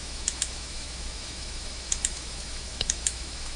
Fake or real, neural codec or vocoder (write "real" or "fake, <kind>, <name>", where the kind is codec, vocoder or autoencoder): fake, autoencoder, DAC-VAE